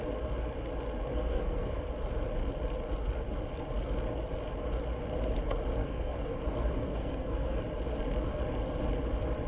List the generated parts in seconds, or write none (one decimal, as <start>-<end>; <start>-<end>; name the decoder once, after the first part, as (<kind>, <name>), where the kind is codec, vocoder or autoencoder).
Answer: 1.1-1.9 (codec, SNAC); 5.8-7.6